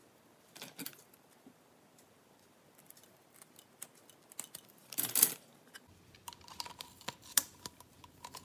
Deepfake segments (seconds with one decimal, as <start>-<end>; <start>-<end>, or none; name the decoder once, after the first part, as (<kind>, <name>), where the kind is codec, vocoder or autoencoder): 0.0-2.6 (vocoder, BigVGAN v2); 4.8-8.0